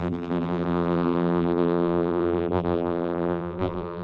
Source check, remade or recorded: remade